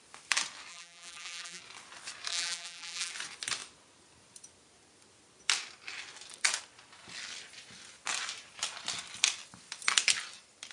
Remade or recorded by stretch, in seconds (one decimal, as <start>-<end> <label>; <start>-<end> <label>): 0.0-0.7 recorded; 0.7-1.6 remade; 1.6-2.3 recorded; 2.3-3.1 remade; 3.1-10.7 recorded